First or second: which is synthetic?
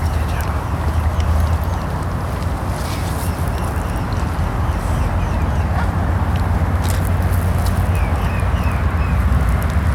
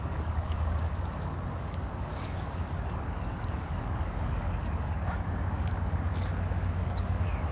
second